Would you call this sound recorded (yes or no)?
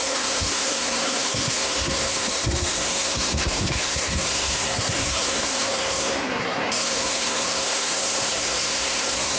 no